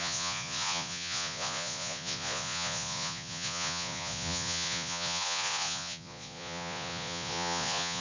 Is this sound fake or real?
fake